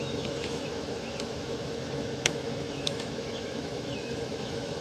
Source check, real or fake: fake